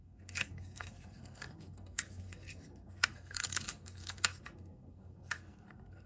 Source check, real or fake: fake